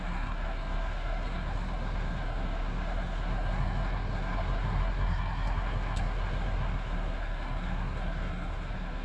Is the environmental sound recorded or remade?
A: remade